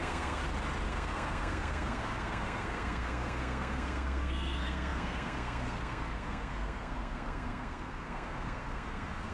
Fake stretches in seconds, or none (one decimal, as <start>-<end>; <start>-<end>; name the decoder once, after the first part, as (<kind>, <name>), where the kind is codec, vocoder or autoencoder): 0.0-0.4 (codec, SNAC); 0.9-9.3